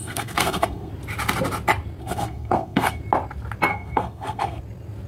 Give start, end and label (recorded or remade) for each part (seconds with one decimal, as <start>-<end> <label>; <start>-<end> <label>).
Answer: 0.0-0.9 remade; 0.9-2.0 recorded; 2.0-3.0 remade; 3.0-3.7 recorded; 3.7-4.6 remade; 4.6-5.1 recorded